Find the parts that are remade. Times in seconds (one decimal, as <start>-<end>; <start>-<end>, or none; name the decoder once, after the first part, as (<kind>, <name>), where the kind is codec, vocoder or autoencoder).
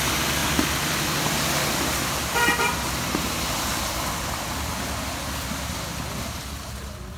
0.4-4.7 (vocoder, BigVGAN v2)